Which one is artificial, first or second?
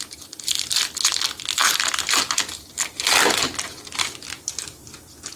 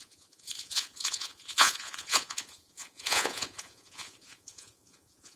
second